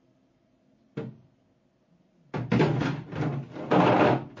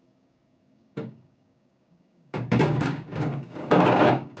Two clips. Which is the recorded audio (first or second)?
first